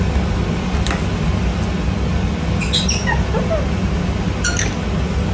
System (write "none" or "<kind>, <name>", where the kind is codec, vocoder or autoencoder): none